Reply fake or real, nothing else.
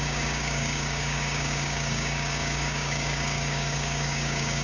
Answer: fake